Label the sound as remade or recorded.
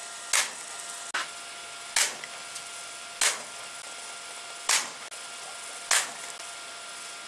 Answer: recorded